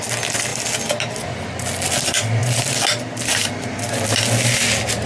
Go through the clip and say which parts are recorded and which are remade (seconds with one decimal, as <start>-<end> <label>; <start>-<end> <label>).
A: 0.0-5.1 recorded

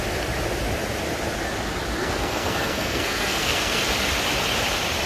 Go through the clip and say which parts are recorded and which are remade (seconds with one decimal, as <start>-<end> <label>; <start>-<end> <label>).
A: 0.0-2.0 recorded; 2.0-3.8 remade; 3.8-5.1 recorded